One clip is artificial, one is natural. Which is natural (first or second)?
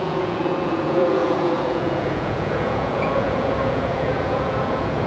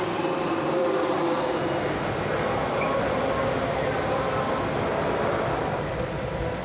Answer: second